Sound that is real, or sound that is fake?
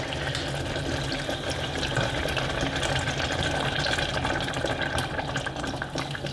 real